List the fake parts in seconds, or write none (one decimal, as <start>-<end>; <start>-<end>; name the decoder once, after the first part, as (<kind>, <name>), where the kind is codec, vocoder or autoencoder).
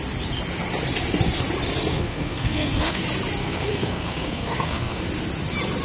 1.9-3.0 (codec, SNAC); 3.4-5.0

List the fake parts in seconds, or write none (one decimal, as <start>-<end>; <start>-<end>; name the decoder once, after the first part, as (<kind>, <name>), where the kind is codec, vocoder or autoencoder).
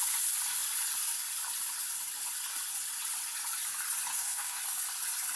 4.1-4.6 (codec, SNAC)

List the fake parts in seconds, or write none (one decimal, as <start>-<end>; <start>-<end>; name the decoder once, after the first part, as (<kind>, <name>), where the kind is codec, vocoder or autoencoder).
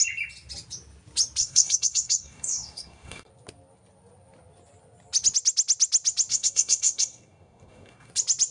1.4-3.3 (codec, SNAC); 6.3-8.1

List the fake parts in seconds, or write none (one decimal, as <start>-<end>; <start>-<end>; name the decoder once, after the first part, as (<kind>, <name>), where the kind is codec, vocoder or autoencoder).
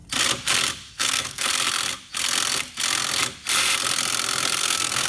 0.9-1.5 (codec, SNAC); 4.6-5.1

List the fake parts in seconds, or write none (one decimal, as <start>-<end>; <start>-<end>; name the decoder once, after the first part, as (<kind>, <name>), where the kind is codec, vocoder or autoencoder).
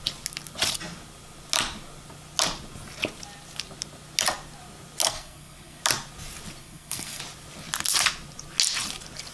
5.0-5.8 (codec, SNAC); 6.6-7.2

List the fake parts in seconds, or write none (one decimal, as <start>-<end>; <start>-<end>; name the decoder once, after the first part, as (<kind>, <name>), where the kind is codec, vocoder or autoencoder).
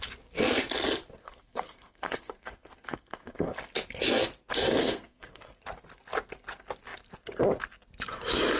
1.2-3.5 (codec, SNAC); 4.8-5.6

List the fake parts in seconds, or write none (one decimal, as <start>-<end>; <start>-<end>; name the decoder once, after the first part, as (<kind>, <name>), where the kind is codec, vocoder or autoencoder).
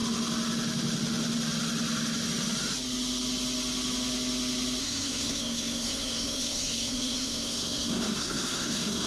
4.8-9.1 (codec, SNAC)